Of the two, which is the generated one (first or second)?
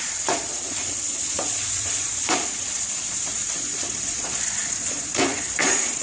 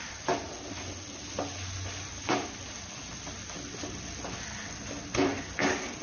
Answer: first